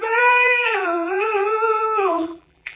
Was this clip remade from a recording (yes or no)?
yes